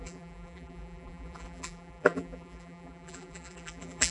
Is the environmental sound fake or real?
fake